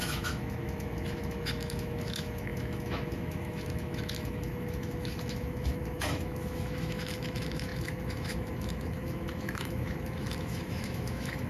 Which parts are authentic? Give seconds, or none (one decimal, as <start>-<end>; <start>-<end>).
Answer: none